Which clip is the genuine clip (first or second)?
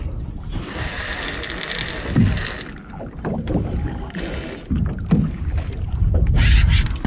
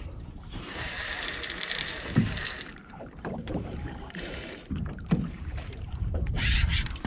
first